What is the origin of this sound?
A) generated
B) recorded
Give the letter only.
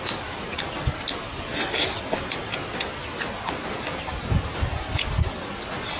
B